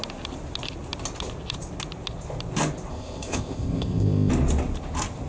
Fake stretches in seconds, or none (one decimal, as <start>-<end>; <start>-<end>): 2.9-4.3